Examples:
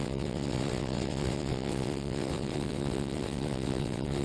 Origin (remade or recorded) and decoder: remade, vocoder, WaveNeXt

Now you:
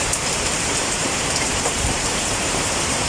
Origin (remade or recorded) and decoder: remade, vocoder, BigVGAN v2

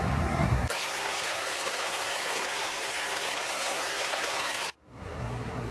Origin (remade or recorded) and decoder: remade, codec, SNAC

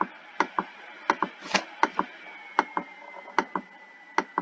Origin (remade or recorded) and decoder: recorded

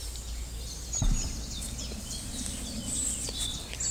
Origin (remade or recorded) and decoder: recorded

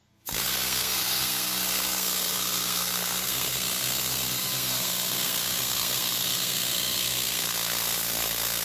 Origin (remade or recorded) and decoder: remade, codec, SNAC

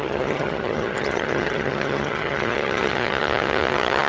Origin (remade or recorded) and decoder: remade, vocoder, HiFi-GAN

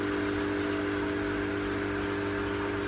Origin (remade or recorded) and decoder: recorded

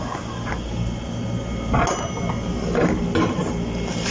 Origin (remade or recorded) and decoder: recorded